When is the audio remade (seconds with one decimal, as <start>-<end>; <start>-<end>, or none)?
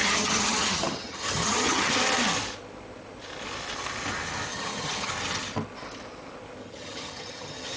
0.0-1.9; 4.5-5.1; 6.6-7.8